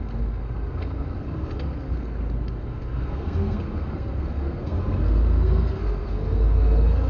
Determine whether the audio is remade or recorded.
remade